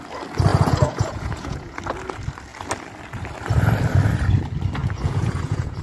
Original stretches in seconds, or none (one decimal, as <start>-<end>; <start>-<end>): 0.0-0.5; 1.8-4.8